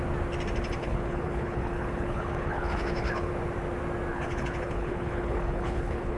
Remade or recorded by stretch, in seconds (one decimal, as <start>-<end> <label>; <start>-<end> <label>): 0.0-0.8 recorded; 0.8-3.3 remade; 3.3-4.1 recorded; 4.1-6.2 remade

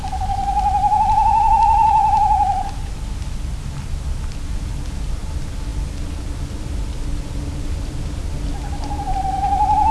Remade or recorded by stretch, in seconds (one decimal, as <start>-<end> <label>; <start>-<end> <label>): 0.0-9.9 recorded

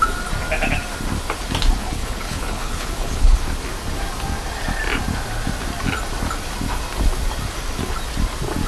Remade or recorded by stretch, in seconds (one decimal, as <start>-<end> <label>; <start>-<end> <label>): 0.0-1.8 recorded; 1.8-3.4 remade; 3.4-8.7 recorded

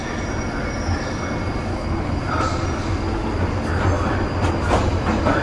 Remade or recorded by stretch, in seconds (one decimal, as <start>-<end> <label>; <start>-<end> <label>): 0.0-1.7 recorded; 1.7-2.2 remade; 2.2-5.4 recorded

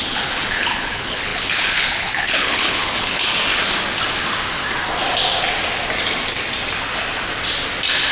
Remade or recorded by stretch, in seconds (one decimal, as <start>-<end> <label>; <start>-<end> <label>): 0.0-3.3 remade; 3.3-8.1 recorded

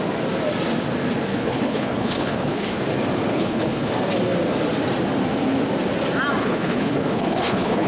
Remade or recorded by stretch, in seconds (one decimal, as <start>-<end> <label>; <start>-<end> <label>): 0.0-1.3 recorded; 1.3-2.8 remade; 2.8-3.3 recorded; 3.3-3.9 remade; 3.9-6.4 recorded; 6.4-7.9 remade